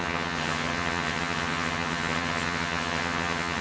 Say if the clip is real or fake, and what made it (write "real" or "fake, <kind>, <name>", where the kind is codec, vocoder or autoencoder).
fake, vocoder, HiFi-GAN